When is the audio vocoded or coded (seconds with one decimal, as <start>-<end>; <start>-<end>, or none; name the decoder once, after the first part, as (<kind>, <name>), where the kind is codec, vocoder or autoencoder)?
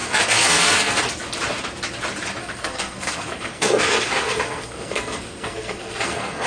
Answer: 0.0-1.0 (codec, SNAC); 2.4-6.5